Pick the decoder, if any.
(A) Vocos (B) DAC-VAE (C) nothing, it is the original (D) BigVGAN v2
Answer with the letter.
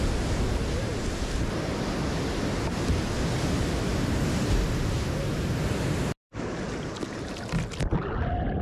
C